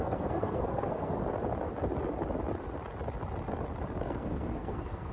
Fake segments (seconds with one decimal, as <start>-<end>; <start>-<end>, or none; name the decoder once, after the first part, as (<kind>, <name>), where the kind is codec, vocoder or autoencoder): 0.0-1.2 (codec, SNAC); 4.0-5.1